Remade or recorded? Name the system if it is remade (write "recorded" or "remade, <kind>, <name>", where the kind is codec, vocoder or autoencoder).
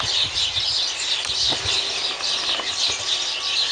recorded